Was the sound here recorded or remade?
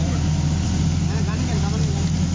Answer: recorded